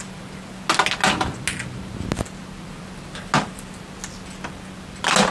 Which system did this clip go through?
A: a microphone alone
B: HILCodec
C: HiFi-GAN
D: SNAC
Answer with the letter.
A